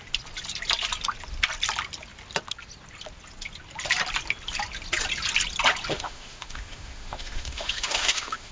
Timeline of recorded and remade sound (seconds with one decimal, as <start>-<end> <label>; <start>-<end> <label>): 0.0-5.9 recorded; 5.9-8.5 remade